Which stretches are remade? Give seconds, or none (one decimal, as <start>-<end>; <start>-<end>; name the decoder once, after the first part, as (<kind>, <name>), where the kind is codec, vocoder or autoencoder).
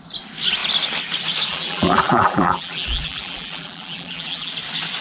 1.5-4.5 (vocoder, BigVGAN v2)